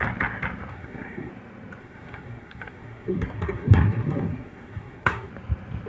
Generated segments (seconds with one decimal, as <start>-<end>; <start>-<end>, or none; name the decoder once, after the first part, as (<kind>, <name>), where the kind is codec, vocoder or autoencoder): 0.7-1.3 (codec, SNAC); 1.8-5.3